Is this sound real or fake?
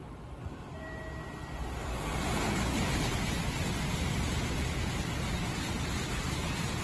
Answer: real